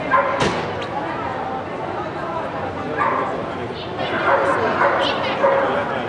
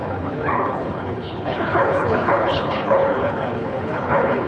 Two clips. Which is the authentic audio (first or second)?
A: first